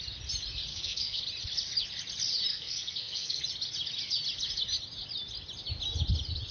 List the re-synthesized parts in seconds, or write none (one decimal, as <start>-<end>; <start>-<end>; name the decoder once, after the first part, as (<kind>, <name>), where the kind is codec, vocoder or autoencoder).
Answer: 0.7-1.2 (codec, SNAC); 2.5-3.4